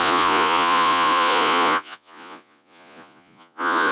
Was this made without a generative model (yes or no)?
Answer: no